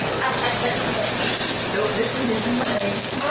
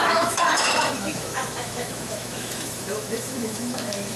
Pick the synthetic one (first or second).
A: second